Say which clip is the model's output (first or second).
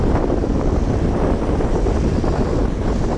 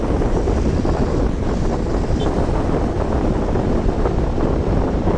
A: second